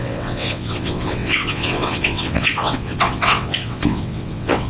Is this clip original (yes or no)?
no